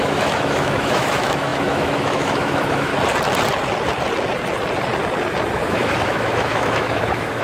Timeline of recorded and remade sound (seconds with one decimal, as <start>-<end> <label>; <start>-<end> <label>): 0.0-2.9 remade; 2.9-5.6 recorded; 5.6-7.4 remade